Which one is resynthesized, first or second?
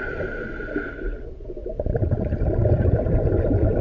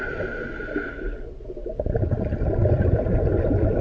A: first